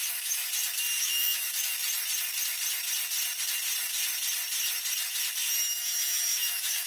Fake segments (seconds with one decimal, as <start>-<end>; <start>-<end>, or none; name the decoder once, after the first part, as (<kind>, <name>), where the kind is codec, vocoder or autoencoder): 0.0-0.5 (autoencoder, DAC-VAE); 1.0-1.8; 5.6-6.9